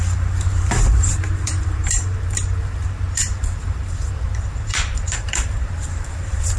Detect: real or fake fake